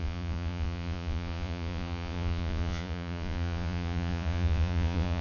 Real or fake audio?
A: fake